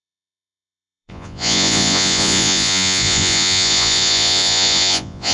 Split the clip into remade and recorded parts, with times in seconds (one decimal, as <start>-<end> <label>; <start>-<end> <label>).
0.0-5.3 remade

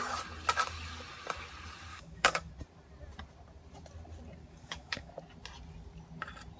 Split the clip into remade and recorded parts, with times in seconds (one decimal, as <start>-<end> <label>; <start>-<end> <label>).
0.0-1.9 recorded; 1.9-2.5 remade; 2.5-4.4 recorded; 4.4-5.1 remade; 5.1-6.6 recorded